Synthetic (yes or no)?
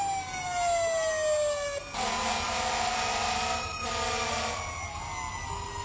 no